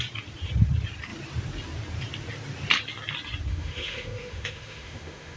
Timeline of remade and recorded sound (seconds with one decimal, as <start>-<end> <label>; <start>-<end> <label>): 0.0-3.5 recorded; 3.5-5.4 remade